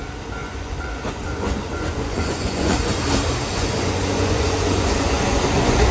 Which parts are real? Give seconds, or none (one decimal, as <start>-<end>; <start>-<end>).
0.0-0.4; 3.0-3.5